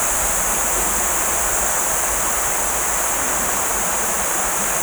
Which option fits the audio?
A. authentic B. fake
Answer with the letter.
A